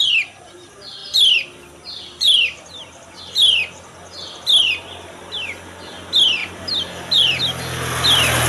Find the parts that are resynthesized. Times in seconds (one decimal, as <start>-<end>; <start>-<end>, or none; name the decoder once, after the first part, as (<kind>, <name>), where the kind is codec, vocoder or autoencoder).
1.0-3.2 (vocoder, BigVGAN v2); 6.4-7.4